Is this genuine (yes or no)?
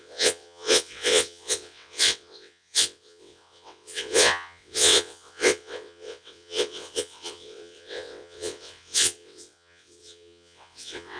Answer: no